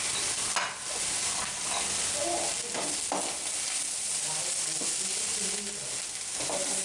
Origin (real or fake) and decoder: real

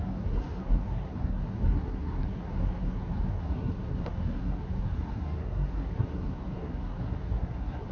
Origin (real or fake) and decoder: fake, codec, SNAC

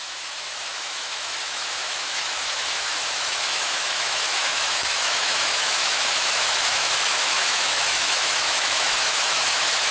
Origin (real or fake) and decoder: fake, autoencoder, DAC-VAE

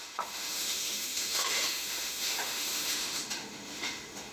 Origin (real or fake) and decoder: fake, autoencoder, DAC-VAE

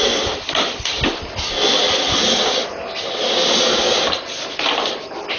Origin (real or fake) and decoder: real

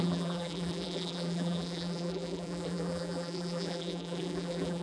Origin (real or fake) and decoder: fake, vocoder, BigVGAN v2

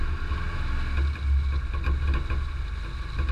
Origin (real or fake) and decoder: real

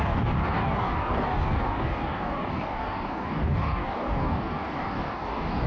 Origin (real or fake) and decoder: fake, codec, DAC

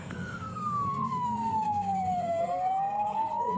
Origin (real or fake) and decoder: fake, codec, SNAC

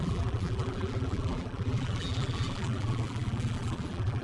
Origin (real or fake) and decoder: fake, vocoder, BigVGAN v2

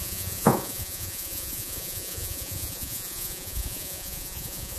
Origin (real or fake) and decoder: fake, vocoder, Vocos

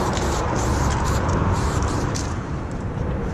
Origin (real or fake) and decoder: fake, vocoder, BigVGAN v2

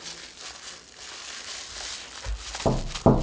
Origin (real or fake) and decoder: real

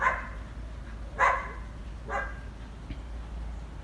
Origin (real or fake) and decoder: real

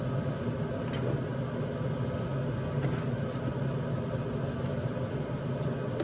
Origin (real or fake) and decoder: real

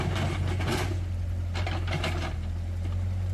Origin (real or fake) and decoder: real